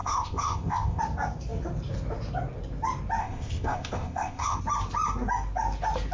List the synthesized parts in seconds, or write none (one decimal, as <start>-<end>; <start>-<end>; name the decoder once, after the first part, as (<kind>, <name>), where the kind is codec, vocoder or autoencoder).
0.0-1.0 (codec, ZipCodec); 3.2-4.6